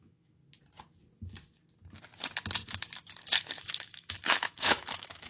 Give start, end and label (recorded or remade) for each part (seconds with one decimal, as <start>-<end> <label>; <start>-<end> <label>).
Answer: 0.0-0.4 remade; 0.4-3.6 recorded; 3.6-5.3 remade